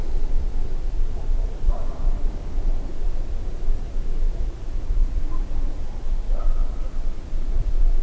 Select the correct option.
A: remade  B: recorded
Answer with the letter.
A